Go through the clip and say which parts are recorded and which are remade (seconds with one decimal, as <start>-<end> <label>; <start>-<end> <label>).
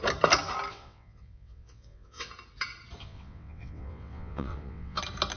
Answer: 0.0-0.7 recorded; 0.7-2.3 remade; 2.3-3.0 recorded; 3.0-5.0 remade; 5.0-5.4 recorded